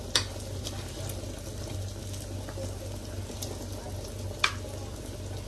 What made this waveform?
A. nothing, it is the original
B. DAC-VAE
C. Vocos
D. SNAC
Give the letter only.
A